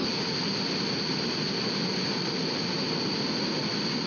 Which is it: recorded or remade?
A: recorded